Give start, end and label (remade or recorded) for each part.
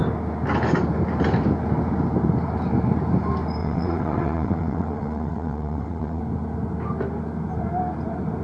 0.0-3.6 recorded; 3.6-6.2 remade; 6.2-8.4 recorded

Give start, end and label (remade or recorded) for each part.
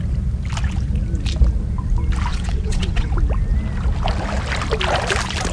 0.0-2.3 recorded; 2.3-3.1 remade; 3.1-5.5 recorded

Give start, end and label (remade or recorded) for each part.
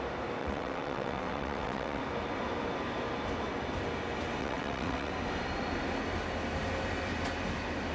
0.0-0.4 recorded; 0.4-2.0 remade; 2.0-4.4 recorded; 4.4-5.1 remade; 5.1-7.9 recorded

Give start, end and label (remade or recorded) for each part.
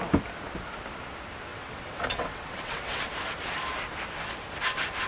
0.0-1.5 recorded; 1.5-3.1 remade; 3.1-5.1 recorded